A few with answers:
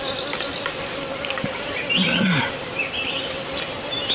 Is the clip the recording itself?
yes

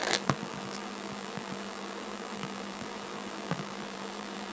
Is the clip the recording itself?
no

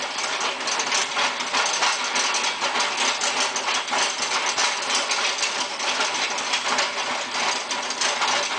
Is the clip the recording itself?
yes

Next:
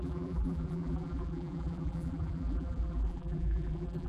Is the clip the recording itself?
no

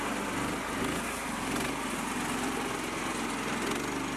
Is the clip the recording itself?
yes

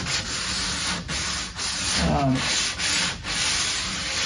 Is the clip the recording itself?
yes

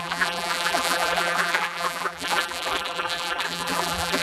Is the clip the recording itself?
no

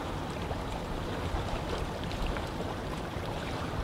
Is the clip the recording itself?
no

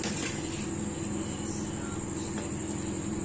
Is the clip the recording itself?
yes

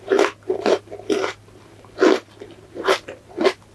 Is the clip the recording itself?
no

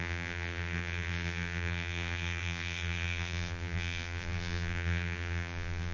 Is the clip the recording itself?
no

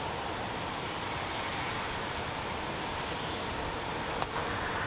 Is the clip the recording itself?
yes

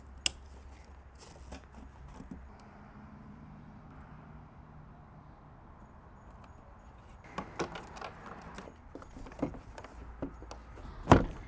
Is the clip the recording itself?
yes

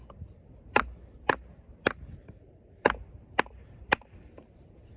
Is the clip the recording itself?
no